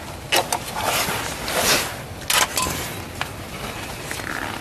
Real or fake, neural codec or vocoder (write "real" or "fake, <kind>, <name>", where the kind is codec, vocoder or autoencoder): real